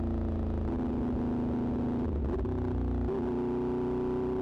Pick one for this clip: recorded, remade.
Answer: recorded